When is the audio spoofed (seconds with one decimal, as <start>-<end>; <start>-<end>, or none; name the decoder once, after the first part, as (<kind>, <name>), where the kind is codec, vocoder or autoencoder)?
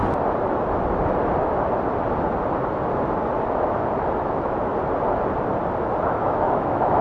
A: 4.2-4.7 (autoencoder, DAC-VAE); 6.2-7.0